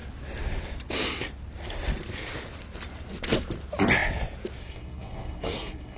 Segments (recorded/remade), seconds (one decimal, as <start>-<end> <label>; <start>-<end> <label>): 0.0-4.6 recorded; 4.6-6.0 remade